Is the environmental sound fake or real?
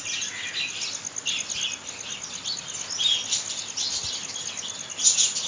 real